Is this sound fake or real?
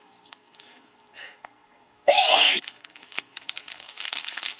fake